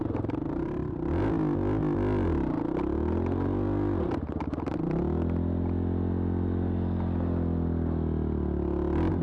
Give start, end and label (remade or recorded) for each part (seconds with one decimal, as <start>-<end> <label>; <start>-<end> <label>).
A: 0.0-9.2 recorded